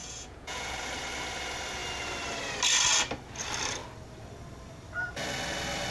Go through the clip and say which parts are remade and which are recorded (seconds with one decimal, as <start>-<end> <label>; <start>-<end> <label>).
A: 0.0-0.7 remade; 0.7-5.9 recorded

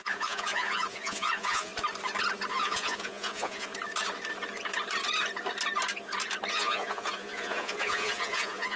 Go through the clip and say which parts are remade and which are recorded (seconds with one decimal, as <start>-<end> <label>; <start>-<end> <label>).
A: 0.0-1.7 remade; 1.7-2.5 recorded; 2.5-3.7 remade; 3.7-6.5 recorded; 6.5-8.8 remade

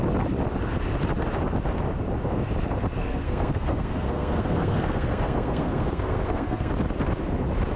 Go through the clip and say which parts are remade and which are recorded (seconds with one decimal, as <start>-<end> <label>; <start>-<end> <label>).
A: 0.0-3.0 recorded; 3.0-6.7 remade; 6.7-7.8 recorded

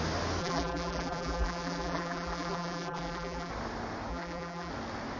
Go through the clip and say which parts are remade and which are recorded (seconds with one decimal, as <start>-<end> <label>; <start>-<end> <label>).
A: 0.0-0.4 recorded; 0.4-3.5 remade; 3.5-4.1 recorded; 4.1-4.7 remade; 4.7-5.2 recorded

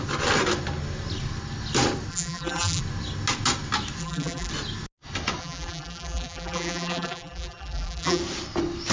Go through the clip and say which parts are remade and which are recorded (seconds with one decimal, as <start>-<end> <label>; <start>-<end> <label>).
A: 0.0-2.1 recorded; 2.1-2.8 remade; 2.8-4.0 recorded; 4.0-4.5 remade; 4.5-5.4 recorded; 5.4-8.2 remade; 8.2-8.9 recorded

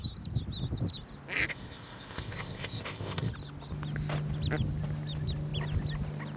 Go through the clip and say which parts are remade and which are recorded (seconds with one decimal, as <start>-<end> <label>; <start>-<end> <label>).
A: 0.0-1.5 recorded; 1.5-3.3 remade; 3.3-6.4 recorded

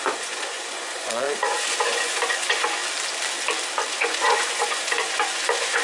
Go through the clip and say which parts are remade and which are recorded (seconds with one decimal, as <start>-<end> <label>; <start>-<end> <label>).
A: 0.0-2.8 remade; 2.8-3.9 recorded; 3.9-5.8 remade

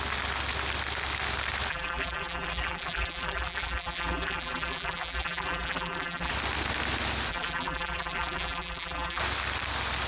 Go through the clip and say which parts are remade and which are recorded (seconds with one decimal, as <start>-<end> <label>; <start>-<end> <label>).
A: 0.0-1.7 recorded; 1.7-6.3 remade; 6.3-7.3 recorded; 7.3-9.2 remade; 9.2-10.1 recorded